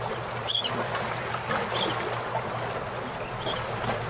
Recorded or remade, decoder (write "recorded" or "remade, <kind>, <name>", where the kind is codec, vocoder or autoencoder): recorded